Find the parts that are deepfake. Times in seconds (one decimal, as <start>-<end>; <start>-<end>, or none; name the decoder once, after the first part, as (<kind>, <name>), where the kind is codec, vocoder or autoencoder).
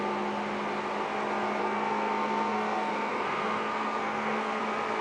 1.6-4.6 (codec, SNAC)